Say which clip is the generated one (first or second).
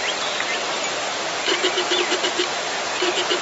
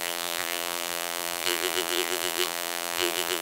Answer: second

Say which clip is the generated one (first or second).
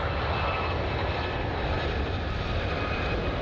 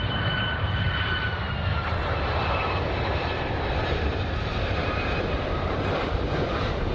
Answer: second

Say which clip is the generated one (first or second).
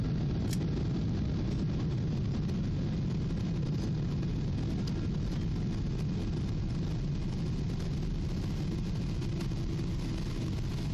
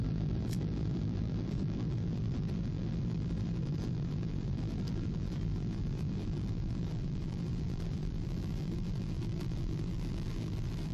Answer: second